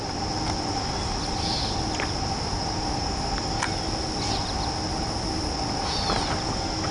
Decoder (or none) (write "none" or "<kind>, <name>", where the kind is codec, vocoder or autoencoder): none